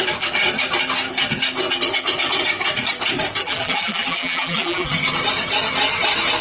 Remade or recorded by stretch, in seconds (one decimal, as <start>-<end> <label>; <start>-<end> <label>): 0.0-3.4 recorded; 3.4-4.9 remade; 4.9-6.4 recorded